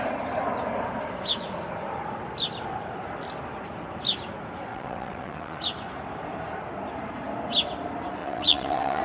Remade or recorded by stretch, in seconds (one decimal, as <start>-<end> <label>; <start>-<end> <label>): 0.0-4.7 recorded; 4.7-5.6 remade; 5.6-8.2 recorded; 8.2-9.0 remade